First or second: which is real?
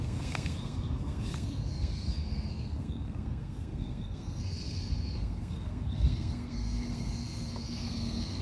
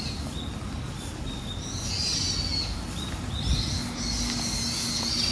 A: second